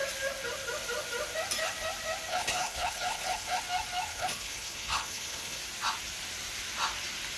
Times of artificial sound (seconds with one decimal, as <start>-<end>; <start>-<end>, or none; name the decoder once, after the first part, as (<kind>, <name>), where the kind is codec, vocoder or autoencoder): 2.3-3.6 (codec, HILCodec); 4.1-5.6